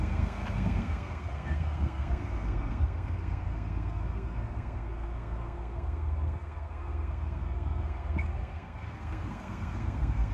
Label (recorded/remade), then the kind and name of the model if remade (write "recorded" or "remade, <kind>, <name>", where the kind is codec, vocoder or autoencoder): remade, codec, SNAC